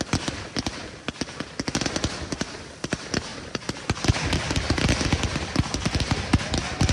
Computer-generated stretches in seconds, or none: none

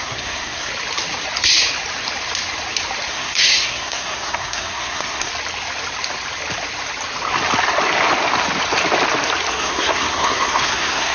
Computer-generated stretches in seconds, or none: 0.0-0.7 (codec, SNAC); 3.1-5.3; 9.5-11.1